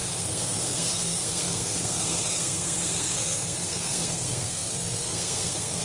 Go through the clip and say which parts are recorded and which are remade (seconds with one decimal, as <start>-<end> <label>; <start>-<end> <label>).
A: 0.0-5.8 remade